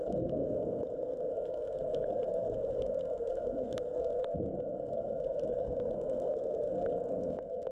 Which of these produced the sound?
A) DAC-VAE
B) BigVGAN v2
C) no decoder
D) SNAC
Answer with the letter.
D